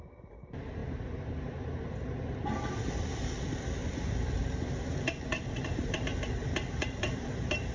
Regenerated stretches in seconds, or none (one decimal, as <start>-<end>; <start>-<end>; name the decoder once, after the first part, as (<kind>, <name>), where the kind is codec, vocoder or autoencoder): 0.0-0.8 (vocoder, BigVGAN v2); 5.4-6.1; 6.8-7.7